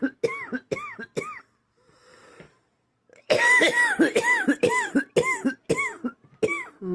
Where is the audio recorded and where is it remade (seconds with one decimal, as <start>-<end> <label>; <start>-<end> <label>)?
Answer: 0.0-2.0 recorded; 2.0-5.1 remade; 5.1-6.9 recorded